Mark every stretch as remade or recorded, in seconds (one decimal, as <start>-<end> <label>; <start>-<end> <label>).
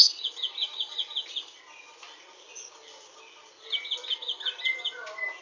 0.0-5.4 recorded